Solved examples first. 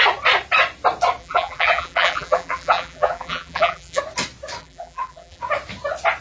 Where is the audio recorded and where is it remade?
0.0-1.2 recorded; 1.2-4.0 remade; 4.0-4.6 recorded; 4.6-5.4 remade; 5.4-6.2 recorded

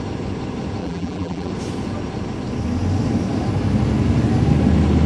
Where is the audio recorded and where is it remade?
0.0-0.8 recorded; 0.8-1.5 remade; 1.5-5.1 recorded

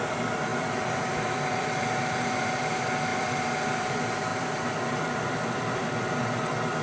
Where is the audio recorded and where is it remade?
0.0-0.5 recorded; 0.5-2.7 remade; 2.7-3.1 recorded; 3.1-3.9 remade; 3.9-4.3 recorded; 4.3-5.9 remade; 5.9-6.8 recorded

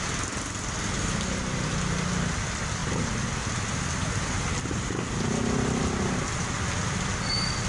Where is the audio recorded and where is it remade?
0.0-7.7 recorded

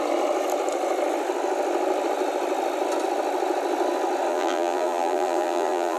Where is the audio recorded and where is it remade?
0.0-4.3 recorded; 4.3-6.0 remade

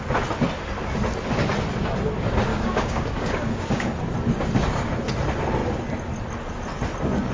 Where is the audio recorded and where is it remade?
0.0-2.5 recorded; 2.5-4.0 remade; 4.0-7.3 recorded

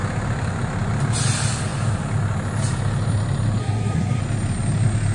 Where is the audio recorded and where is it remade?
0.0-3.6 recorded; 3.6-4.2 remade; 4.2-5.1 recorded